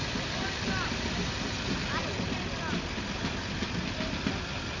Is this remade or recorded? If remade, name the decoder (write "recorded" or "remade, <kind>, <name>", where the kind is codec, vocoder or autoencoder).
recorded